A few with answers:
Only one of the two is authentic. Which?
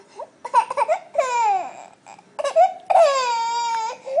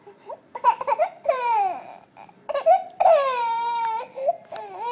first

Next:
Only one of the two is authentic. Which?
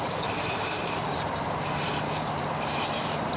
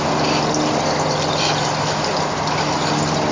second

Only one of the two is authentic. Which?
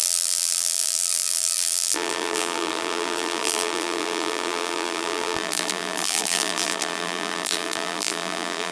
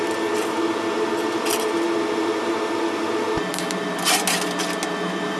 second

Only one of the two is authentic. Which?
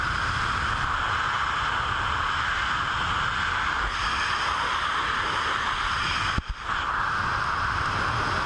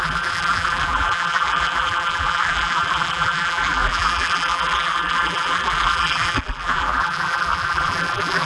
first